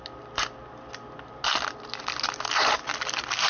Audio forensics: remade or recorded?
recorded